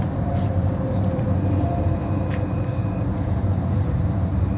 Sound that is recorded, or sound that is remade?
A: remade